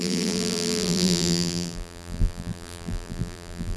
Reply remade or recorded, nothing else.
remade